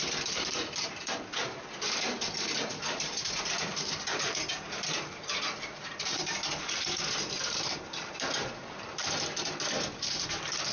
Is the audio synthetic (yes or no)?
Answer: yes